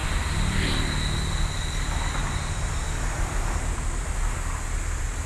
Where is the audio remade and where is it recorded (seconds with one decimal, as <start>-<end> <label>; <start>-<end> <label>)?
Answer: 0.0-5.3 recorded